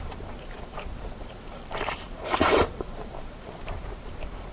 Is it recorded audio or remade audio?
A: remade